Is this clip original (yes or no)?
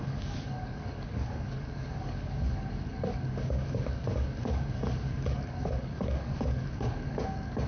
no